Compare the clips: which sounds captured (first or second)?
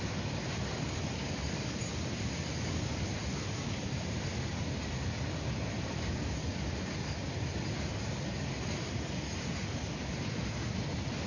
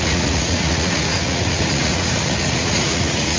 first